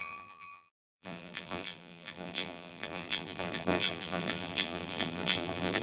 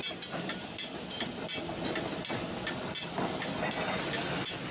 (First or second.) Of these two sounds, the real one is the second